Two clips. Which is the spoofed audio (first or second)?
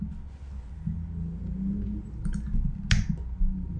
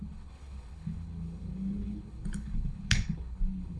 second